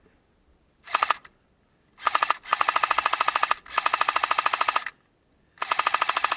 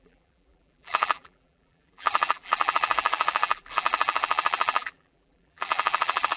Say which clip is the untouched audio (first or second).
first